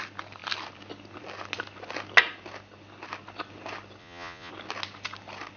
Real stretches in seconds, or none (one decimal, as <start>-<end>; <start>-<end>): 0.0-4.0; 4.5-5.6